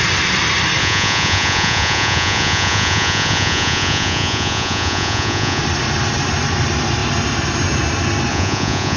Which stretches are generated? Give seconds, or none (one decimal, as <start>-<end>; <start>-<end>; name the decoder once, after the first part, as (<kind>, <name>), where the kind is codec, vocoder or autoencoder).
0.8-5.6 (vocoder, Vocos); 8.3-9.0

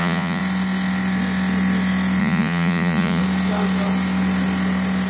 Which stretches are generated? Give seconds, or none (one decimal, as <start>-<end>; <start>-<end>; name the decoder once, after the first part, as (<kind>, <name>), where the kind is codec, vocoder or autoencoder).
0.0-0.4 (vocoder, Vocos); 2.2-3.2

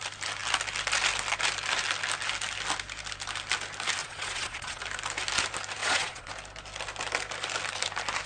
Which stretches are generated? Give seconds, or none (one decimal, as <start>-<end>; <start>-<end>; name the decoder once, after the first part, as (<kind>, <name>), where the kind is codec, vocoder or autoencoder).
4.0-4.8 (vocoder, Vocos); 5.8-6.3

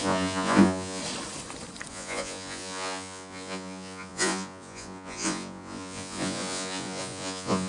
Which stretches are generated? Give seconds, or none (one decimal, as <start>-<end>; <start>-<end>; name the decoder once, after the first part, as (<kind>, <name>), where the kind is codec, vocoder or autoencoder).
0.0-1.0 (vocoder, Vocos); 1.9-7.7

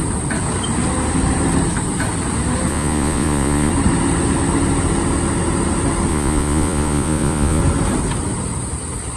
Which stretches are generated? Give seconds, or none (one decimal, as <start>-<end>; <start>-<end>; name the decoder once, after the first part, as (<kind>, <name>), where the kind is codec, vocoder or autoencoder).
2.7-3.7 (vocoder, Vocos); 6.1-7.6